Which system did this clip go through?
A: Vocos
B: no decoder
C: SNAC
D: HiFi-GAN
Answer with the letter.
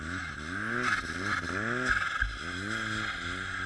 B